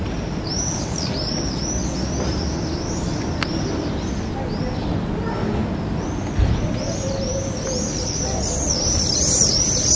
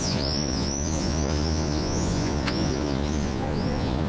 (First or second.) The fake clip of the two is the second